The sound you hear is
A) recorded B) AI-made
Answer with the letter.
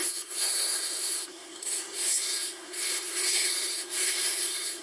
B